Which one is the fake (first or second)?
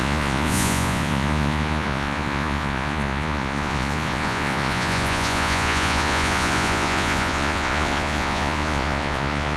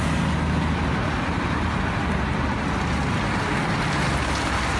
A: first